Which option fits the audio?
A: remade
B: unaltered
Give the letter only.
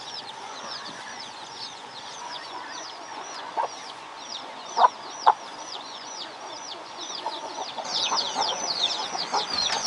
A